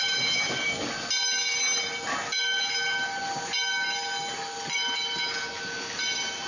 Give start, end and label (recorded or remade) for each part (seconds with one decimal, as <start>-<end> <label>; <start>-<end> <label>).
0.0-6.5 recorded